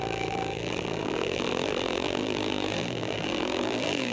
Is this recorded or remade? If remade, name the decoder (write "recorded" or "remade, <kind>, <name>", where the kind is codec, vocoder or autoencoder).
remade, vocoder, BigVGAN v2